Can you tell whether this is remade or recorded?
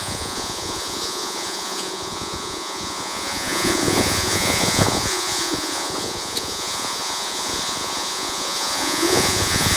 remade